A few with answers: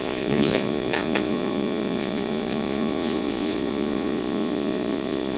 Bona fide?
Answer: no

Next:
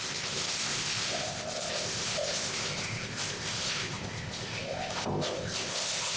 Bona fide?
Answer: no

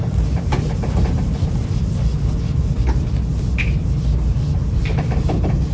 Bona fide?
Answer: yes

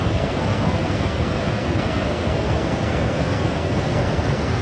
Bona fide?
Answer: no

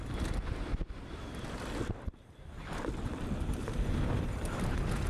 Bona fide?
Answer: yes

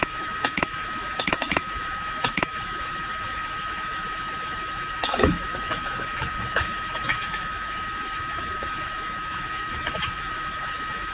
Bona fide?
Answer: no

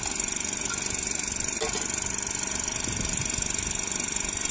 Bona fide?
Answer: yes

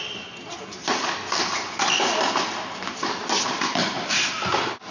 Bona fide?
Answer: yes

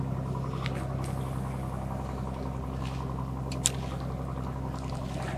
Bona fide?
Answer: yes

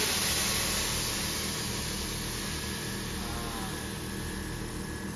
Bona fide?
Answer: yes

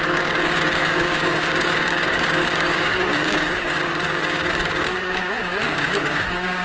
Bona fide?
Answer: no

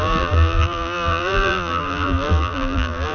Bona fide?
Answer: no